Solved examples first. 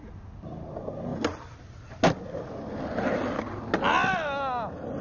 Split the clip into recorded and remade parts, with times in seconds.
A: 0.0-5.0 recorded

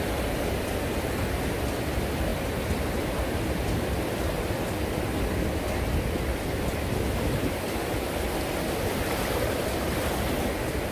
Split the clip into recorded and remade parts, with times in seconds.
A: 0.0-10.9 recorded

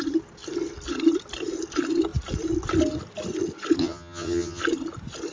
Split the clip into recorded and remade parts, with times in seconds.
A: 0.0-3.8 recorded; 3.8-4.6 remade; 4.6-5.3 recorded

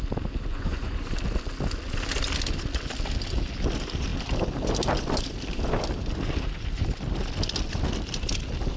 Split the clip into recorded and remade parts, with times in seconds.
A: 0.0-0.5 recorded; 0.5-1.1 remade; 1.1-8.8 recorded